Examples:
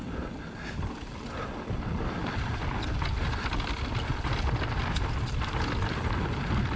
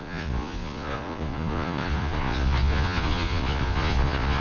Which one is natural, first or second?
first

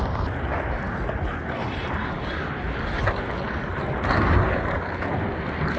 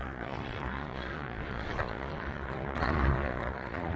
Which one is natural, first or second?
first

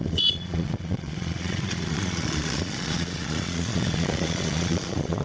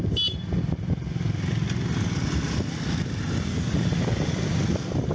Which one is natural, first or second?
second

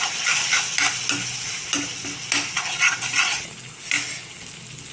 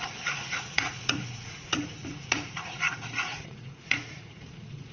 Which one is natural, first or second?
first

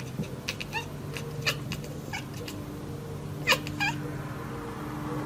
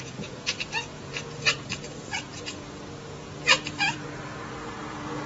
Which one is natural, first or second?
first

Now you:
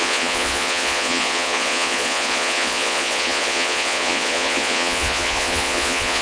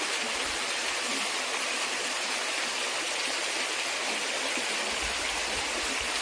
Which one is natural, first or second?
second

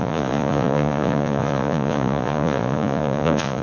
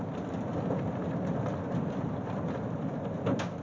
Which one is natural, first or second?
second